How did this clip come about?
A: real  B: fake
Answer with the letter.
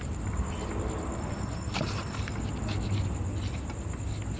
A